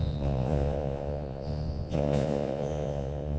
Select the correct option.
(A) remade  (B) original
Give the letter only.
A